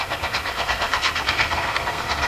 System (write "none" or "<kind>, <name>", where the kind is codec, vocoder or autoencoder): codec, SNAC